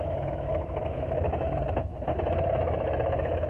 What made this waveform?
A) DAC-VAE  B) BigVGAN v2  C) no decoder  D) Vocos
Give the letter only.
A